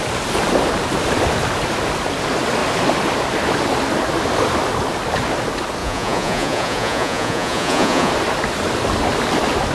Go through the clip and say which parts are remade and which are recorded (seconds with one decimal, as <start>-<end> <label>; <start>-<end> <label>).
0.0-5.8 recorded; 5.8-8.1 remade; 8.1-9.7 recorded